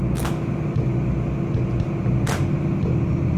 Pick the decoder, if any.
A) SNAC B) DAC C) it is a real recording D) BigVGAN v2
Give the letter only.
C